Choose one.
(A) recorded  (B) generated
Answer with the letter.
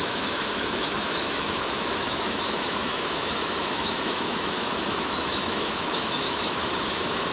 B